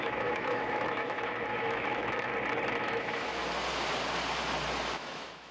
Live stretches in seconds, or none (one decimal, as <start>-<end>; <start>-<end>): 2.3-2.8; 3.4-4.9